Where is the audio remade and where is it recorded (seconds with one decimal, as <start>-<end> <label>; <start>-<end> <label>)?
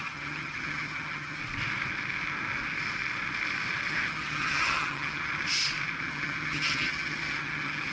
0.0-1.4 remade; 1.4-3.9 recorded; 3.9-5.3 remade; 5.3-6.0 recorded; 6.0-7.9 remade